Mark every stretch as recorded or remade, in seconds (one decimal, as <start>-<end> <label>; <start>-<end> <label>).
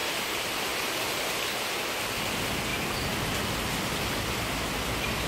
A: 0.0-1.7 remade; 1.7-2.7 recorded; 2.7-3.2 remade; 3.2-5.3 recorded